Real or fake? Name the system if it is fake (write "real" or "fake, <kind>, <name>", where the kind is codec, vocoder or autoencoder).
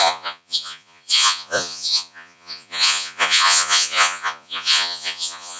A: fake, vocoder, Vocos